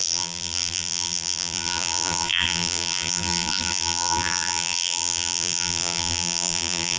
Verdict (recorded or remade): remade